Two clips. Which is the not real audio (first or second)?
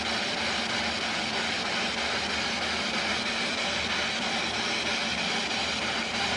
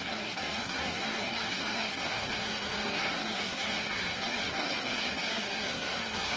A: second